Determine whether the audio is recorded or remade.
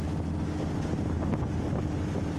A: recorded